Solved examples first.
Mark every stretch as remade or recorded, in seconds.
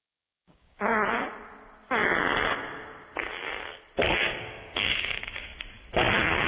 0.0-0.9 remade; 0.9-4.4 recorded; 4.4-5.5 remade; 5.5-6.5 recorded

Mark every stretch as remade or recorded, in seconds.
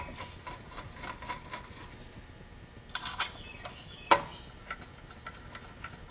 0.0-6.1 recorded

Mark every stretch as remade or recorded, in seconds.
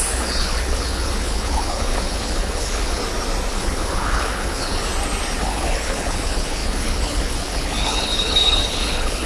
0.0-3.0 remade; 3.0-3.5 recorded; 3.5-4.9 remade; 4.9-5.4 recorded; 5.4-9.3 remade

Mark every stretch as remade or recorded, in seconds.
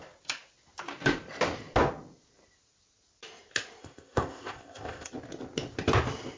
0.0-3.8 recorded; 3.8-5.1 remade; 5.1-6.4 recorded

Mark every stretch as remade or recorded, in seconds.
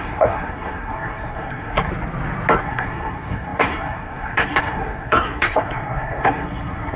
0.0-1.9 remade; 1.9-2.6 recorded; 2.6-7.0 remade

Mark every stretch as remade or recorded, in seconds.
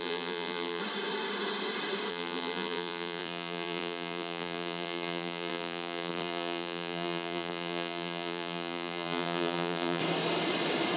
0.0-0.8 remade; 0.8-2.1 recorded; 2.1-10.0 remade; 10.0-11.0 recorded